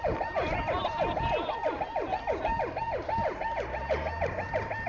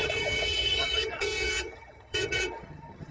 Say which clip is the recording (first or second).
first